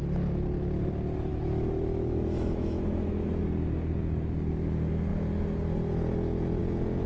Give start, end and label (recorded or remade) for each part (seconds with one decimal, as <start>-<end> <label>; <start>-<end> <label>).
0.0-1.3 recorded; 1.3-3.4 remade; 3.4-7.1 recorded